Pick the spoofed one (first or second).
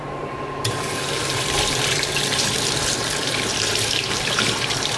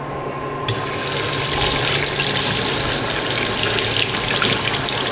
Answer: first